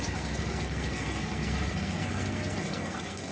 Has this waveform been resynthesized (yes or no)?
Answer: yes